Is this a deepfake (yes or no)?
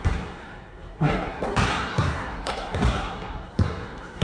yes